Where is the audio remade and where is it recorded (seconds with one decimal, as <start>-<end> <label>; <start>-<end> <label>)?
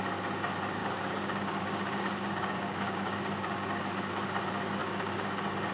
0.0-0.8 recorded; 0.8-3.8 remade; 3.8-4.8 recorded; 4.8-5.7 remade